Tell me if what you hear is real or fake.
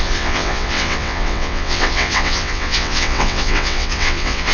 fake